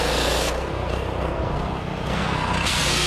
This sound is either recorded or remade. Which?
remade